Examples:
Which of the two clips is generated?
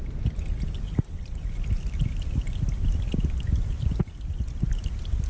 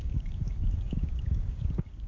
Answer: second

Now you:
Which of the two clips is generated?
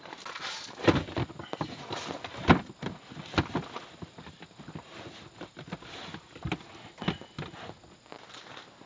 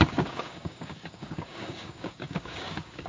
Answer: second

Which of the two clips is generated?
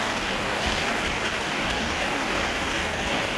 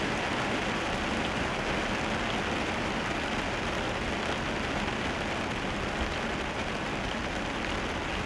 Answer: first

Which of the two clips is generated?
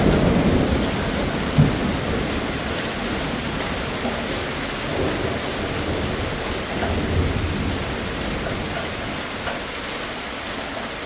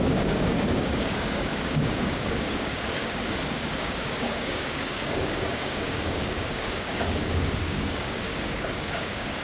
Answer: second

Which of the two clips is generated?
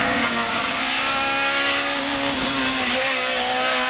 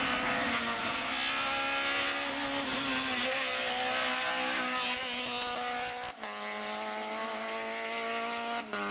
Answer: first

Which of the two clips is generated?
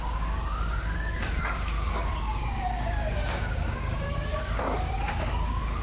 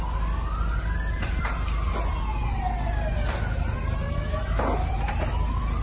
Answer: first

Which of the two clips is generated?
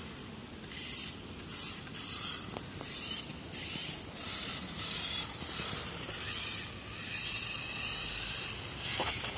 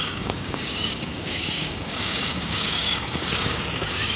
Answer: second